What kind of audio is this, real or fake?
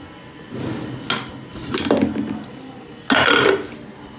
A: real